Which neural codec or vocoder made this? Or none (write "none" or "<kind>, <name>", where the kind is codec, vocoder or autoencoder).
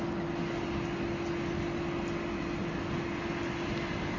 none